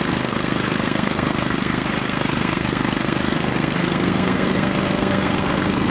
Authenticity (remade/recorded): remade